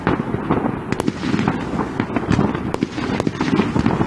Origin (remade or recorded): recorded